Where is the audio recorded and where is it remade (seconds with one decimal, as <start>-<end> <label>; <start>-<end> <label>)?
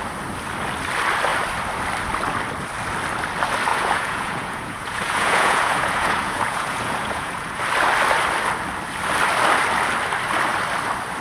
0.0-3.7 recorded; 3.7-7.6 remade; 7.6-11.2 recorded